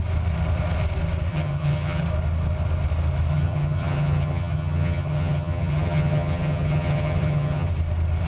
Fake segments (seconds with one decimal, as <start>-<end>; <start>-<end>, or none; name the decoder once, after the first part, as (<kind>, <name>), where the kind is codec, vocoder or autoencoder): 1.3-2.0 (vocoder, HiFi-GAN); 3.3-7.7